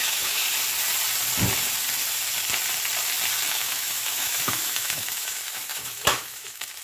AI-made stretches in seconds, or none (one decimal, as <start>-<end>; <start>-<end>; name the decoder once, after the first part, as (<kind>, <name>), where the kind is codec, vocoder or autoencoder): 0.0-0.4 (autoencoder, DAC-VAE); 3.5-6.8

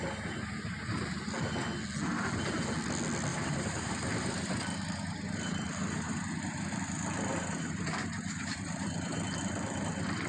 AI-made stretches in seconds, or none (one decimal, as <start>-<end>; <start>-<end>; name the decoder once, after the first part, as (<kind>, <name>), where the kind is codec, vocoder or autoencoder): 3.3-6.8 (vocoder, BigVGAN v2); 7.3-9.4

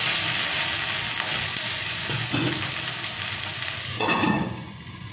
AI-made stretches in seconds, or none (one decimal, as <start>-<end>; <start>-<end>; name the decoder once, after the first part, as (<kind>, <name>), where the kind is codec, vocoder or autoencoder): 1.5-2.5 (vocoder, Vocos); 3.9-5.1

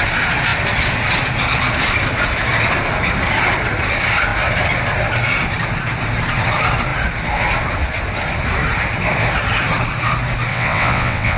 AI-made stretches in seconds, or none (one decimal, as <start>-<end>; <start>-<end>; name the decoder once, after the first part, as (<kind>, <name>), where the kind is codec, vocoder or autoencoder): 10.5-11.4 (vocoder, WaveNeXt)

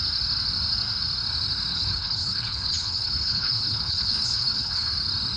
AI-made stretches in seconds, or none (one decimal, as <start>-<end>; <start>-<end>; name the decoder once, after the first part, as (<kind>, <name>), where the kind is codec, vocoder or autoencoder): 1.7-4.9 (codec, HILCodec)